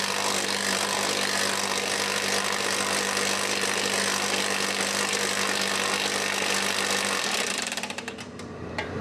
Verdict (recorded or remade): remade